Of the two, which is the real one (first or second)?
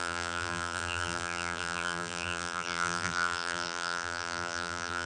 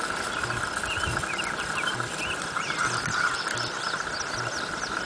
second